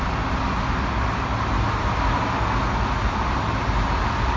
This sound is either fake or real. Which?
real